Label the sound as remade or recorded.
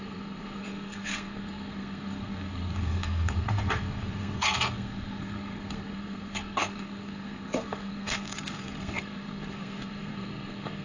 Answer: remade